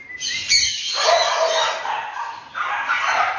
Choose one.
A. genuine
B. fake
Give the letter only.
A